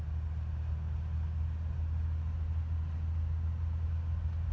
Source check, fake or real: real